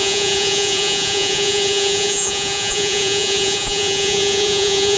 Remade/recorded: remade